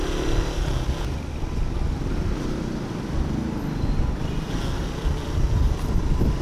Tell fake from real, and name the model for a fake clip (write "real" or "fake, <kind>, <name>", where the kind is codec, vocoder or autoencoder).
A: fake, vocoder, BigVGAN v2